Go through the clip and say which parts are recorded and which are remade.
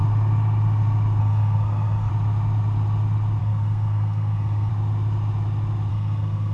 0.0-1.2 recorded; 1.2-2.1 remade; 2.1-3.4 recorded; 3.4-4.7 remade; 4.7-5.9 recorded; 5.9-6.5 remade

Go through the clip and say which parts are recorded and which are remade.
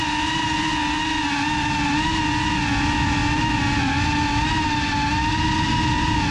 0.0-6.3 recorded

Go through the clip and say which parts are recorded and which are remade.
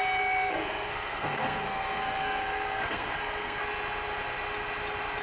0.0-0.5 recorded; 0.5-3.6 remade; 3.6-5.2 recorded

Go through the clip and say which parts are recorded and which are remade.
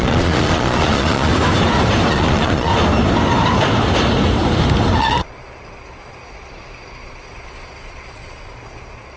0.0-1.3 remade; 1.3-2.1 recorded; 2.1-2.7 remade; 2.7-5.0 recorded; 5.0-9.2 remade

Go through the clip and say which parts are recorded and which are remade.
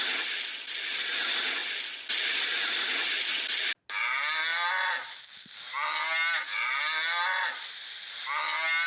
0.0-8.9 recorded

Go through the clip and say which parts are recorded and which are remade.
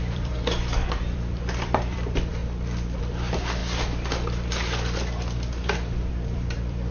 0.0-2.4 remade; 2.4-3.0 recorded; 3.0-3.6 remade; 3.6-6.1 recorded; 6.1-6.9 remade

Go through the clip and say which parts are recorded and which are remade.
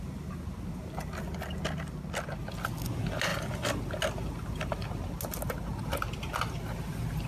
0.0-7.3 recorded